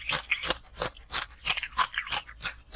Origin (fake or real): real